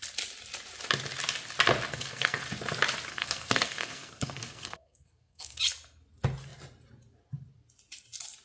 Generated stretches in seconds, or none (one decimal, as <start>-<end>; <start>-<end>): 1.9-2.4; 3.1-5.6